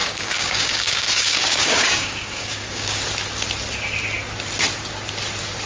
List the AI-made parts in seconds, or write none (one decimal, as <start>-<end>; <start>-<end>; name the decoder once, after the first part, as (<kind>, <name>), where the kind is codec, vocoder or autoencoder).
0.0-3.0 (codec, DAC)